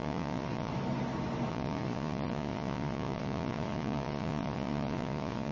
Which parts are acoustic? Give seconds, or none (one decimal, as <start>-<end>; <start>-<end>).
0.7-1.5